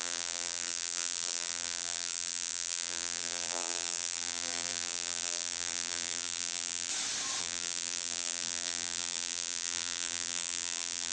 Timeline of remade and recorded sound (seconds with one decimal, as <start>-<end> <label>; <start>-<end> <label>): 0.0-6.9 remade; 6.9-7.4 recorded; 7.4-11.1 remade